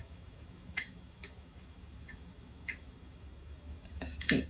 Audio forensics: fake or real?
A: fake